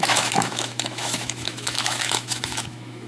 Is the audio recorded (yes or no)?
no